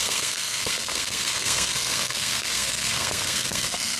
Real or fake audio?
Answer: fake